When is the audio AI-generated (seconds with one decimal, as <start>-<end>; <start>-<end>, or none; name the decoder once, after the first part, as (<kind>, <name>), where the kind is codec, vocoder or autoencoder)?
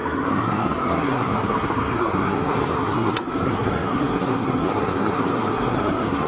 0.0-6.3 (codec, SNAC)